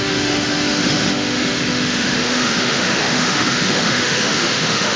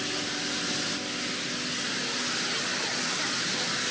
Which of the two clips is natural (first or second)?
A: second